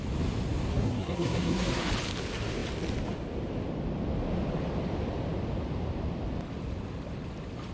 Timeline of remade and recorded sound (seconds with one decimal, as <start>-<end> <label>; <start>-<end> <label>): 0.0-0.7 recorded; 0.7-1.9 remade; 1.9-7.7 recorded